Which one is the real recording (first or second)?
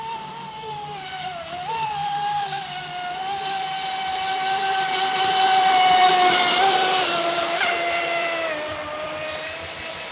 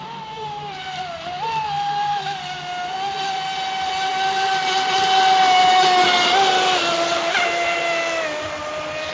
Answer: second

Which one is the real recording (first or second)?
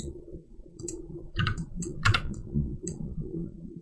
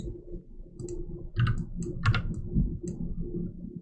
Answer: second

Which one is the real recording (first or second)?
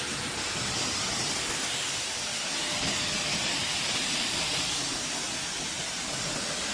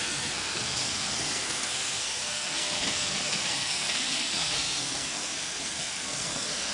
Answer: first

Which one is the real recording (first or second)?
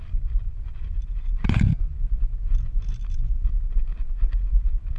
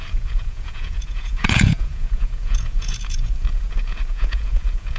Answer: first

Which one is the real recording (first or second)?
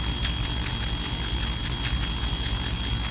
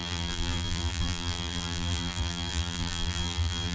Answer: first